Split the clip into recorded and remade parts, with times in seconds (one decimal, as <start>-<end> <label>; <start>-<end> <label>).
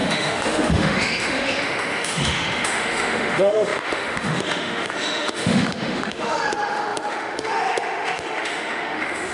0.0-9.3 remade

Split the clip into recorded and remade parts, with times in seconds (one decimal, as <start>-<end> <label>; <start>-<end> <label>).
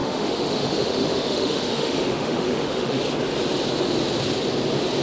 0.0-3.0 remade; 3.0-5.0 recorded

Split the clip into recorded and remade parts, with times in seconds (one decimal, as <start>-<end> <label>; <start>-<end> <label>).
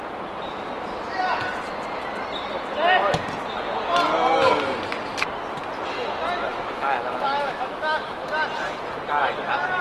0.0-6.5 recorded; 6.5-8.3 remade; 8.3-9.8 recorded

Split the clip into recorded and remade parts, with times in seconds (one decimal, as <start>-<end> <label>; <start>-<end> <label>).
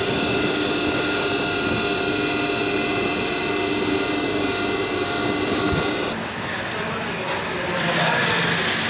0.0-8.9 recorded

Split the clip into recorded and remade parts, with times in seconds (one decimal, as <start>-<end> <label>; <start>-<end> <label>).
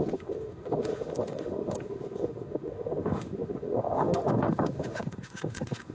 0.0-5.9 remade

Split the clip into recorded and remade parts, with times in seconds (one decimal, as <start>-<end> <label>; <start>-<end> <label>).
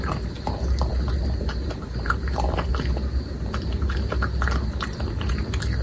0.0-5.8 recorded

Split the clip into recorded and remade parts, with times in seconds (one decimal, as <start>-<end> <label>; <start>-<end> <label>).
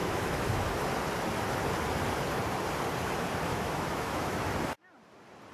0.0-0.7 remade; 0.7-3.5 recorded; 3.5-4.4 remade; 4.4-5.5 recorded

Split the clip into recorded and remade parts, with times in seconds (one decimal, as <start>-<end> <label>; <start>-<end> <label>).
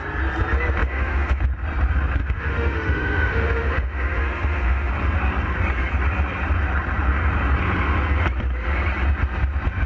0.0-0.8 recorded; 0.8-1.4 remade; 1.4-2.2 recorded; 2.2-4.9 remade; 4.9-9.9 recorded